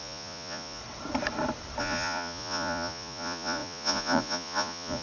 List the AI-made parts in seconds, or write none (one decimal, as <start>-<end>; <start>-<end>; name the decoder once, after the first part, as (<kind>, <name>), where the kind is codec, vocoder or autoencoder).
0.0-0.8 (vocoder, Vocos); 1.8-5.0